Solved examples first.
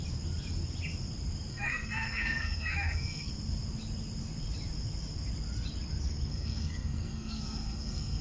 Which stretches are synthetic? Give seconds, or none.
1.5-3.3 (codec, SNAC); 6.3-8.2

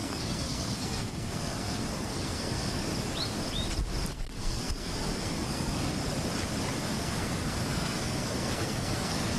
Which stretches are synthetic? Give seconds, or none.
0.0-2.9 (codec, SNAC); 4.1-6.0; 6.8-9.4

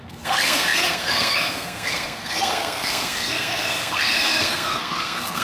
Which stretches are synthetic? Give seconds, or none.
0.0-5.4 (codec, SNAC)

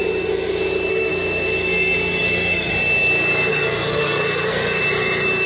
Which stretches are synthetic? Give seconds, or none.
0.9-2.7 (codec, SNAC); 3.5-4.8

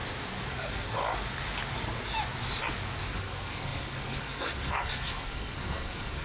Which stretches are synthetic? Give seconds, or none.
0.5-1.0 (codec, SNAC); 3.1-6.2

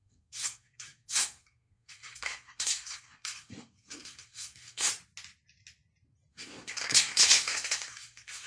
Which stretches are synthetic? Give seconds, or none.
0.0-4.9 (codec, SNAC); 6.3-8.5

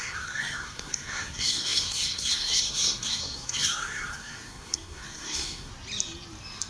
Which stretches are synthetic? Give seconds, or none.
0.0-5.7 (codec, SNAC)

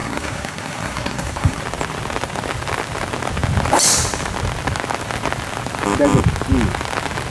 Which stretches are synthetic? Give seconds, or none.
0.0-1.6 (codec, SNAC)